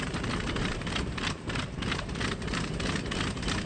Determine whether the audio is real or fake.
fake